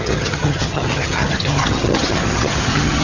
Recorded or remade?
remade